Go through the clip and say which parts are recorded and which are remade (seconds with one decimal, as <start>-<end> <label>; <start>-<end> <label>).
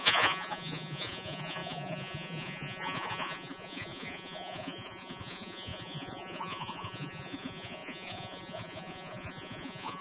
0.0-10.0 remade